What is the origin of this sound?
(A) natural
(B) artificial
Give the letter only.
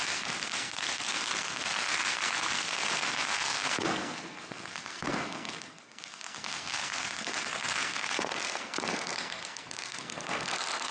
B